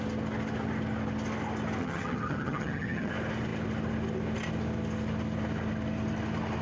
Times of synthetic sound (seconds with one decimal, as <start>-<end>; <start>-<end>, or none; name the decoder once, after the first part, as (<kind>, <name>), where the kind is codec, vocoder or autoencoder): 1.8-3.1 (vocoder, HiFi-GAN)